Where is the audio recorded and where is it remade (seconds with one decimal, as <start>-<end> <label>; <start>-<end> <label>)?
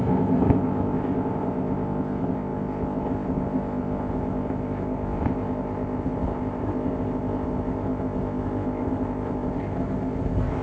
0.0-10.6 remade